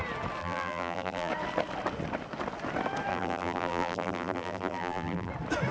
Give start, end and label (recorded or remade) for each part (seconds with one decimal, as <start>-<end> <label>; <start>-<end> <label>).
0.0-0.4 recorded; 0.4-1.3 remade; 1.3-3.1 recorded; 3.1-5.3 remade; 5.3-5.7 recorded